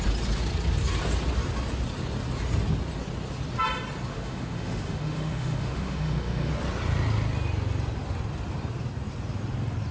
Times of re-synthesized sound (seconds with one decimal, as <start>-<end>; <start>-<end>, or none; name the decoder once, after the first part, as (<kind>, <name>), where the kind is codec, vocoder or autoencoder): 4.1-6.5 (autoencoder, DAC-VAE)